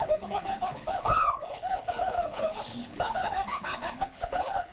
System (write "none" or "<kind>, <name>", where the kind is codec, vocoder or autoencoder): codec, HILCodec